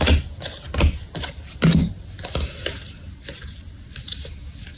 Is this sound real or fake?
real